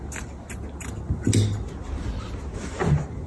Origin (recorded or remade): recorded